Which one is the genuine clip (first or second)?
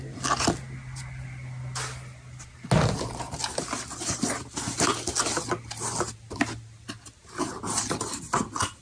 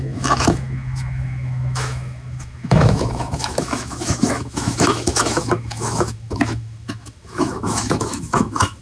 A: first